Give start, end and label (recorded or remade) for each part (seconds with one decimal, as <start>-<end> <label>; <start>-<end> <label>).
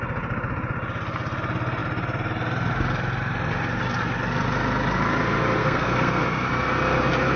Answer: 0.0-5.6 recorded; 5.6-6.2 remade; 6.2-7.4 recorded